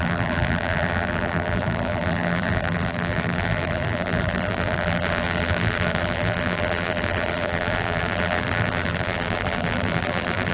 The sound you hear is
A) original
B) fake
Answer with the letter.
B